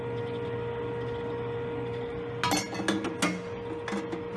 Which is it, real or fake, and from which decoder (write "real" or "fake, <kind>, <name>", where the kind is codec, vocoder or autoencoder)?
real